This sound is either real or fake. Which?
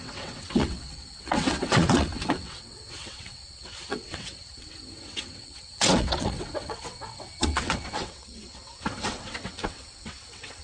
fake